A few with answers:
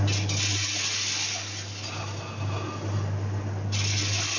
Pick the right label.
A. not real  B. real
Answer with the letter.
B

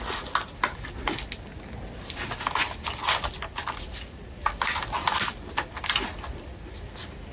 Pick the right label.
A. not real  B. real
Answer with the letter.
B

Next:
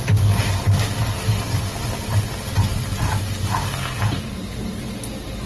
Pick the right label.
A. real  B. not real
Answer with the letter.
A